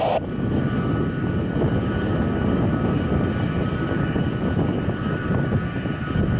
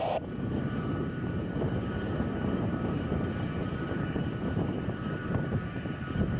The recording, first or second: first